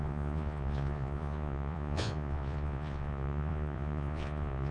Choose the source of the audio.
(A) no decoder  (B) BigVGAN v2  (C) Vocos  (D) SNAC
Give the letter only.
C